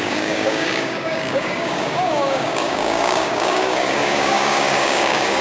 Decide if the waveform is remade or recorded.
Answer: remade